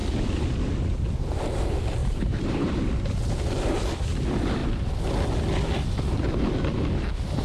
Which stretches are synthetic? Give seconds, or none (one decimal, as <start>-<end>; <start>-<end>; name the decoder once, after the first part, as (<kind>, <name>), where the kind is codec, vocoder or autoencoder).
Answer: 2.0-2.7 (vocoder, BigVGAN v2)